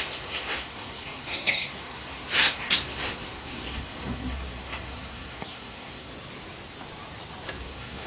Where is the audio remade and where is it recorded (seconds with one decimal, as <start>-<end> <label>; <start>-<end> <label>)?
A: 0.0-6.1 remade; 6.1-7.6 recorded; 7.6-8.1 remade